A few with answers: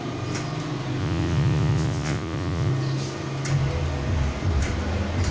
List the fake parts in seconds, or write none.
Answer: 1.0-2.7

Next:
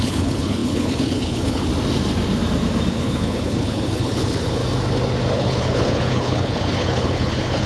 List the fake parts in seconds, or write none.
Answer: 0.0-1.7; 2.9-4.6; 5.3-7.7